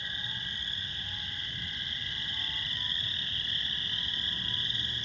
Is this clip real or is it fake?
real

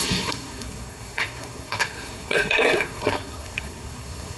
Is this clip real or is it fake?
fake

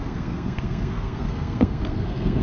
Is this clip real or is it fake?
fake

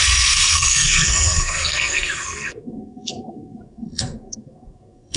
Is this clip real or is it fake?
fake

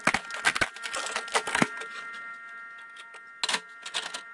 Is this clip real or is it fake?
real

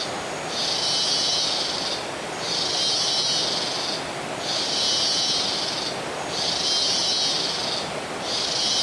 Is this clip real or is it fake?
real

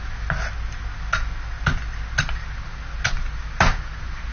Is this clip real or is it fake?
real